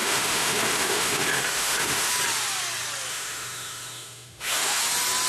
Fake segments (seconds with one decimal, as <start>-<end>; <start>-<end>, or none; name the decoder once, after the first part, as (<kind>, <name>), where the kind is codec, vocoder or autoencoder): 0.0-2.1 (autoencoder, DAC-VAE); 3.1-4.8